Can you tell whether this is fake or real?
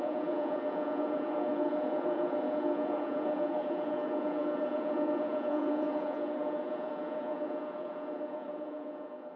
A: fake